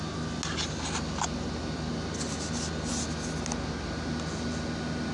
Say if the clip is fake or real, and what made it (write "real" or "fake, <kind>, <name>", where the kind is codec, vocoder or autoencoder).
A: real